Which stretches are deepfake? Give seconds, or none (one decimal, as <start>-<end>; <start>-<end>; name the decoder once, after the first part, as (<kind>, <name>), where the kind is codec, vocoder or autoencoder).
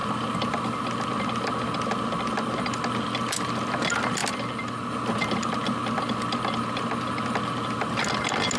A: none